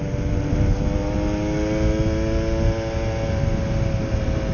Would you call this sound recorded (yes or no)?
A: yes